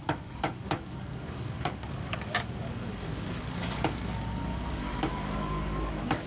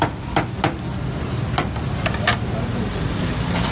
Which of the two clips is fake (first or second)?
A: first